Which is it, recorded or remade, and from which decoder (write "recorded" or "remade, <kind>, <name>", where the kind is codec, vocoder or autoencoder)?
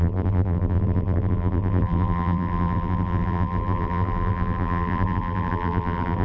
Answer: remade, vocoder, BigVGAN v2